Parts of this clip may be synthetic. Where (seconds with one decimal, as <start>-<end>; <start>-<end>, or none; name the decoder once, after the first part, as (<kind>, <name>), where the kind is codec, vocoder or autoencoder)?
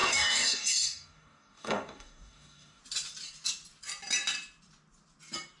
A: 0.0-2.8 (codec, DAC)